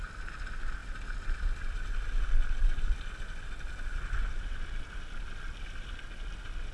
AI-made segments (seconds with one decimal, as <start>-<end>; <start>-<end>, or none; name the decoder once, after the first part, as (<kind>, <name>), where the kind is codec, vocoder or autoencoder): none